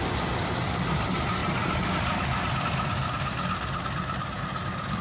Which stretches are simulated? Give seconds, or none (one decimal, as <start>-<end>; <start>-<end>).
none